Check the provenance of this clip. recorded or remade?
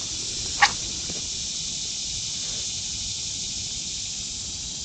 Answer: recorded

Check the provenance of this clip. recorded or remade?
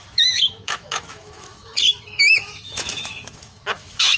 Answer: remade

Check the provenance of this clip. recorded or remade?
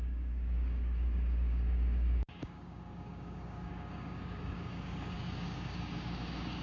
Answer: remade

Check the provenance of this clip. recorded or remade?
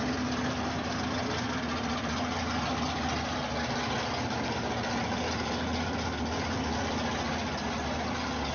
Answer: recorded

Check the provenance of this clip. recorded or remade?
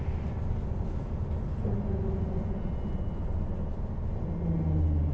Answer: recorded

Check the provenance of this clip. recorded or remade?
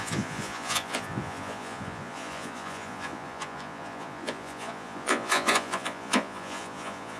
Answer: remade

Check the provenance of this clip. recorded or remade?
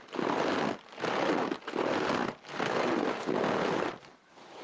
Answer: recorded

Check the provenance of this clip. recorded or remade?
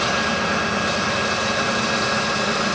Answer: recorded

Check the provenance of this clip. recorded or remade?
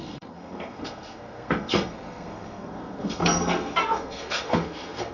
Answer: remade